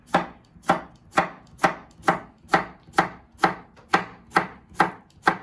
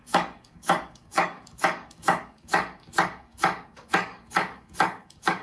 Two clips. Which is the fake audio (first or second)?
second